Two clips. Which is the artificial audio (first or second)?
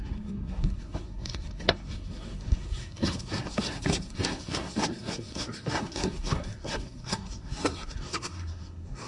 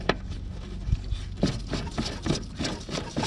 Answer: first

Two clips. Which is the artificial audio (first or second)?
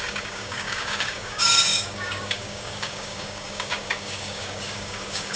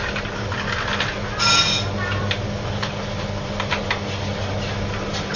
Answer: first